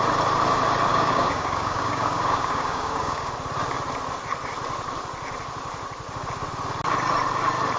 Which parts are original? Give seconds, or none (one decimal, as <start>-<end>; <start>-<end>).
0.0-0.9; 3.3-7.8